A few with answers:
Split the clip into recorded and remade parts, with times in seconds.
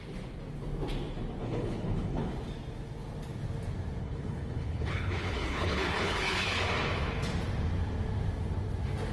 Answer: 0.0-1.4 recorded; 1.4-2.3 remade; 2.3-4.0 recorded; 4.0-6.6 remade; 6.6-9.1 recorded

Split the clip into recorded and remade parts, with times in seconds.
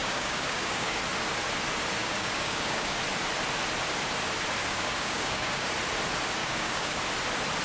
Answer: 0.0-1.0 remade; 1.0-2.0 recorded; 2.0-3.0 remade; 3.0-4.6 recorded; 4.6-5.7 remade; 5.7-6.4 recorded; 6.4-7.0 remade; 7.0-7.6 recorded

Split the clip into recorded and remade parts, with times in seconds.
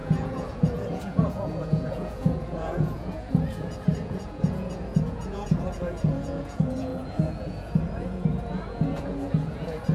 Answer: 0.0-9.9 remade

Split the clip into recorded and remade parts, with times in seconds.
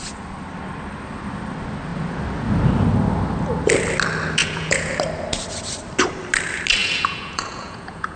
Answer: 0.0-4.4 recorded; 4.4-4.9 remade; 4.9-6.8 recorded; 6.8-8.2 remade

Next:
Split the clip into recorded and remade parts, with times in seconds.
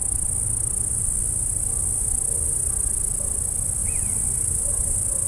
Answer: 0.0-5.3 recorded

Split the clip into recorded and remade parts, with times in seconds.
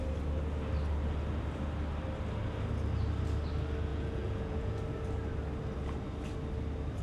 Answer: 0.0-3.9 recorded; 3.9-4.8 remade; 4.8-7.0 recorded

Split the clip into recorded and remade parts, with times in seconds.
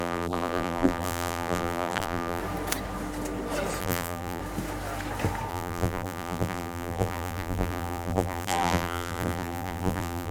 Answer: 0.0-2.4 remade; 2.4-3.8 recorded; 3.8-4.4 remade; 4.4-5.5 recorded; 5.5-10.3 remade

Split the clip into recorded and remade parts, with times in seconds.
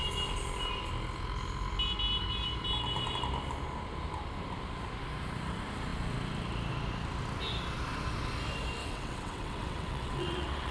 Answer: 0.0-8.8 recorded; 8.8-10.7 remade